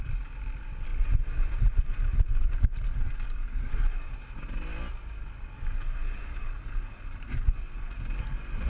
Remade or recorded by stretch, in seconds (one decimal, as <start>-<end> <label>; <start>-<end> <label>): 0.0-8.7 recorded